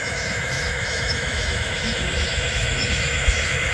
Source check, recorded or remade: remade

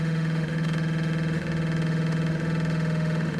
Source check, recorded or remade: remade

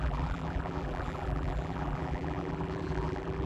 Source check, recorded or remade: remade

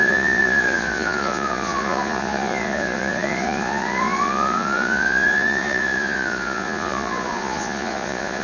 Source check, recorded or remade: remade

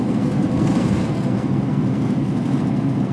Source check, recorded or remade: remade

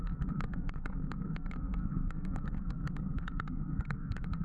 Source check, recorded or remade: remade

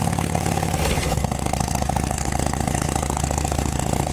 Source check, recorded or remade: remade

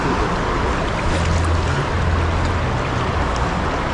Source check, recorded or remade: recorded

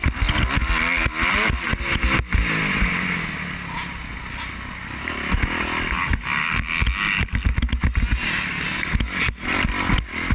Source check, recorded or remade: recorded